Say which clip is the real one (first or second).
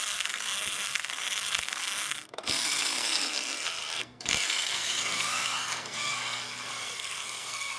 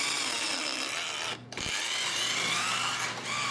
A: second